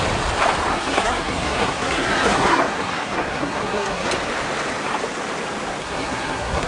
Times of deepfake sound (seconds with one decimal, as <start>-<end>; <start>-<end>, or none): 0.7-4.1; 5.8-6.7